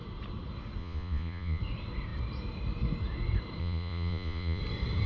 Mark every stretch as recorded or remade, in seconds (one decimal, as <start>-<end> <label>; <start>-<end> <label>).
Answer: 0.0-0.8 recorded; 0.8-1.6 remade; 1.6-3.6 recorded; 3.6-4.6 remade; 4.6-5.1 recorded